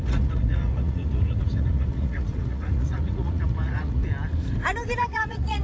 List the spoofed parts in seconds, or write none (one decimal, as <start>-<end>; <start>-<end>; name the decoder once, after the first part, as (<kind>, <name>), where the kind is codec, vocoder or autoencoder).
0.0-4.0 (vocoder, Vocos); 5.0-5.6